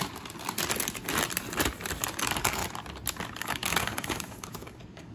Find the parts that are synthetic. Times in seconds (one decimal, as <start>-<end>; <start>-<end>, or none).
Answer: 2.2-2.6; 3.4-5.1